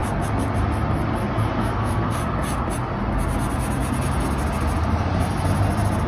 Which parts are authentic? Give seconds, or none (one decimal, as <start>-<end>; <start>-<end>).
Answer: 0.0-1.6; 2.2-6.1